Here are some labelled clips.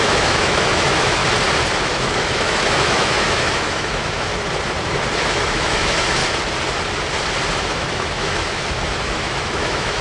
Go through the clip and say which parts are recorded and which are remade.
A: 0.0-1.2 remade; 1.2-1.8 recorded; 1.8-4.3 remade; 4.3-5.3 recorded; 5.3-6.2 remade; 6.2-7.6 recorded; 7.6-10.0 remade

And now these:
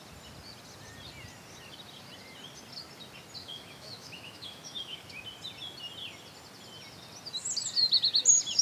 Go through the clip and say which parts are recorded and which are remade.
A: 0.0-3.4 recorded; 3.4-5.0 remade; 5.0-8.6 recorded

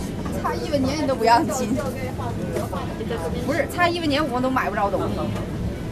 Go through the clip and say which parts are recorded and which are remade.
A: 0.0-5.9 recorded

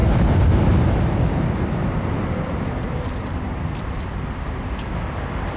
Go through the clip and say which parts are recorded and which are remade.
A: 0.0-5.6 recorded